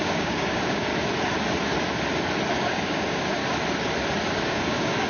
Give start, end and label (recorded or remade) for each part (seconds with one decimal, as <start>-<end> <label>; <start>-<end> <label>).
0.0-0.9 remade; 0.9-2.5 recorded; 2.5-3.4 remade; 3.4-4.4 recorded; 4.4-5.1 remade